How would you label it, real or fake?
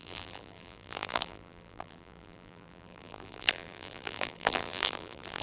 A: fake